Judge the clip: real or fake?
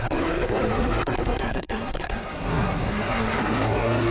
fake